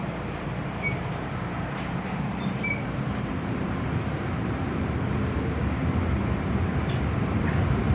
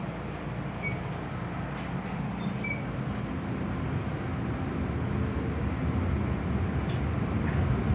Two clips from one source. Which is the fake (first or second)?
first